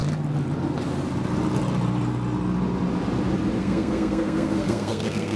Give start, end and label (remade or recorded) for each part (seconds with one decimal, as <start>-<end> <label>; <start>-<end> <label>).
0.0-3.6 recorded; 3.6-5.4 remade